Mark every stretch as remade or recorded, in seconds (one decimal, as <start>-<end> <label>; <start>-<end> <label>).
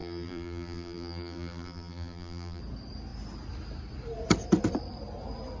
0.0-2.6 remade; 2.6-5.6 recorded